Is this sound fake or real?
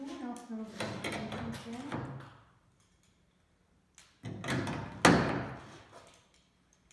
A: real